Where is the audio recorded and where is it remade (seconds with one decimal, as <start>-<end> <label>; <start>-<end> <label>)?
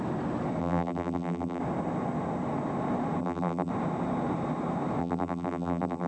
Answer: 0.0-0.6 recorded; 0.6-1.6 remade; 1.6-3.2 recorded; 3.2-3.7 remade; 3.7-5.0 recorded; 5.0-6.1 remade